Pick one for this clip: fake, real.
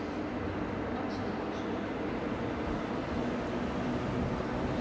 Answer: real